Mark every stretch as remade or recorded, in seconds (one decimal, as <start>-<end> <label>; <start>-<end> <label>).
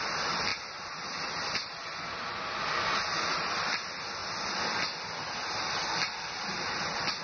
0.0-7.2 recorded